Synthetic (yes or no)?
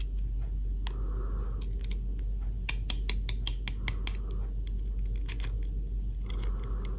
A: no